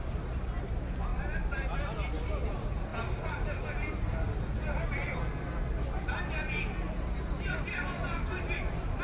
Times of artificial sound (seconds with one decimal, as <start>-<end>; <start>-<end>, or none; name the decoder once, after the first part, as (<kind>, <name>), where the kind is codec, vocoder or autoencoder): none